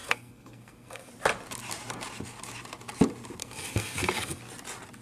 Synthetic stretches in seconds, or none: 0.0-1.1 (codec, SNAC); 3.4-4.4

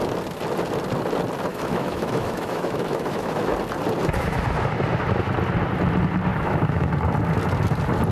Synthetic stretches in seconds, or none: 1.5-3.4 (autoencoder, DAC-VAE); 6.3-6.9

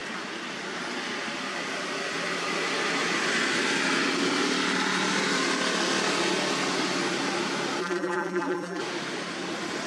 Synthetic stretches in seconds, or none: 7.8-8.8 (vocoder, BigVGAN v2)

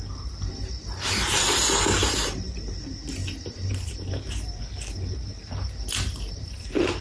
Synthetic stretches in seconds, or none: 3.2-4.6 (vocoder, BigVGAN v2); 5.3-7.0